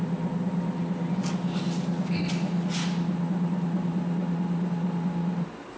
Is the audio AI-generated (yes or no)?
no